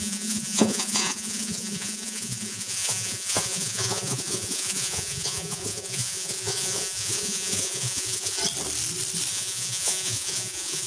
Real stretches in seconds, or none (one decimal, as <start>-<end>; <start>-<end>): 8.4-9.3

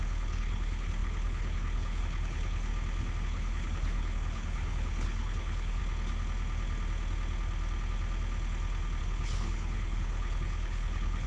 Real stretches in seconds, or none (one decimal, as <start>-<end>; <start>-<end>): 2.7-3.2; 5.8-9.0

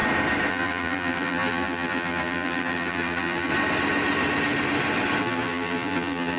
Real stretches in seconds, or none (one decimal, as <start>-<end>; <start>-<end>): 0.0-0.5; 3.5-5.2

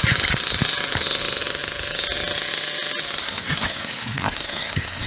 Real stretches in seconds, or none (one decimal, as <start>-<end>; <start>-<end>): 0.0-3.2

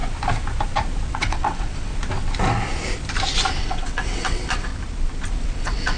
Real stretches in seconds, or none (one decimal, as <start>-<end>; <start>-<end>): 0.0-1.1; 1.9-3.6; 4.7-5.3